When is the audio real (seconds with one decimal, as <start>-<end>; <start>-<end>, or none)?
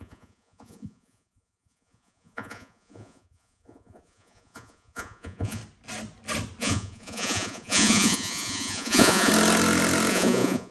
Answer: 5.6-6.6; 9.3-10.1